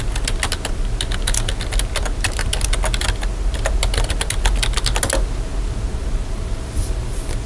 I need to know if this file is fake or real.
real